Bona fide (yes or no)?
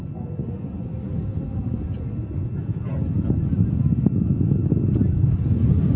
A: yes